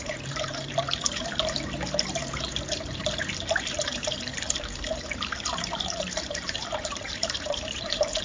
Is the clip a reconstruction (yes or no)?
yes